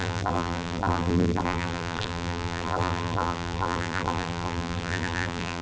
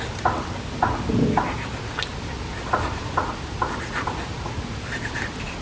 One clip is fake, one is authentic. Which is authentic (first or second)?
second